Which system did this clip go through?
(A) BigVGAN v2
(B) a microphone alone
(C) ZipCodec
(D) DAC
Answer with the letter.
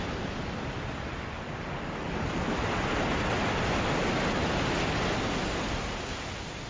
B